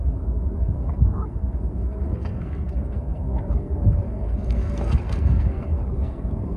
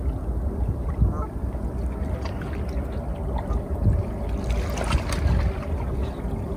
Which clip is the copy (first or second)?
first